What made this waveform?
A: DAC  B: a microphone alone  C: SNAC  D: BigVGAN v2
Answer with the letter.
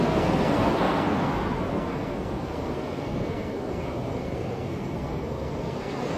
C